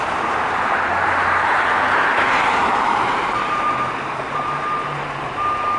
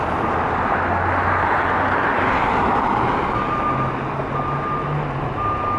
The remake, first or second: first